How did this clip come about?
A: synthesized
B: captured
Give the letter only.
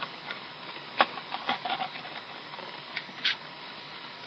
A